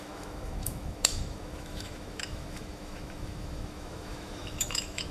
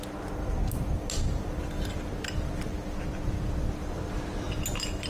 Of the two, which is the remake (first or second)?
first